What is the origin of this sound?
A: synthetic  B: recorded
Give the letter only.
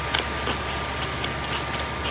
B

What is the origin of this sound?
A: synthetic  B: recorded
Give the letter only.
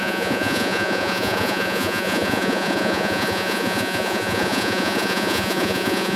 A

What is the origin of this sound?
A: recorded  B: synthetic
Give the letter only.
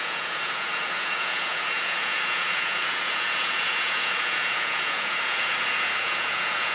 B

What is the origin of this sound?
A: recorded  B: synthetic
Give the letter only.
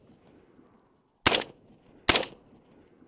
A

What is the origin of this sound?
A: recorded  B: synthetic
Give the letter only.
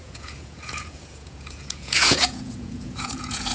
B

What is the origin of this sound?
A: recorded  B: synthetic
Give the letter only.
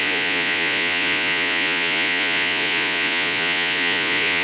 B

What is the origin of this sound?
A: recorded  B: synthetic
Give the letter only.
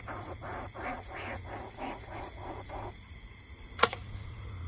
B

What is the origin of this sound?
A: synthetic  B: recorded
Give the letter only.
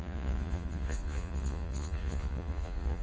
A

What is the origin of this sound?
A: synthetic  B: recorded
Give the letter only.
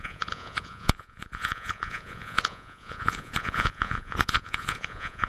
A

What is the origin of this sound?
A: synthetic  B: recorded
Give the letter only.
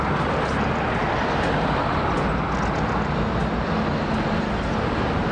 B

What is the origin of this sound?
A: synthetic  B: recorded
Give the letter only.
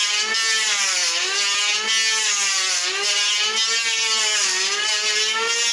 B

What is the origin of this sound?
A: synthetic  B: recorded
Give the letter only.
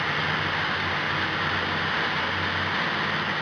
B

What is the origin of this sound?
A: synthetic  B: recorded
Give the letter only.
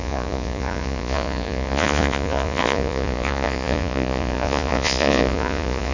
A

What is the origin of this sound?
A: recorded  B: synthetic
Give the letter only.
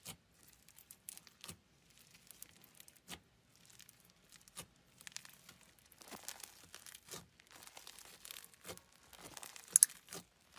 A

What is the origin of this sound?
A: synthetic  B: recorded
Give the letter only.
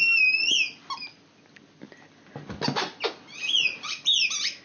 B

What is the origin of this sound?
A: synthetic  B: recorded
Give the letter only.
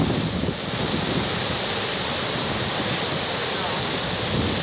B